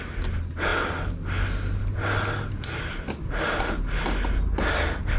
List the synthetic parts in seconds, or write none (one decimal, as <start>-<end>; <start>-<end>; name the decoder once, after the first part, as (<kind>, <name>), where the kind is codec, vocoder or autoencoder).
none